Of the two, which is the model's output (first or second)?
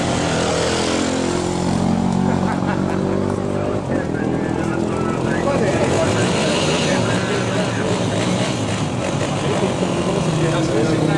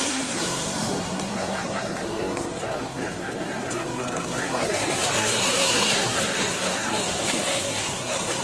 second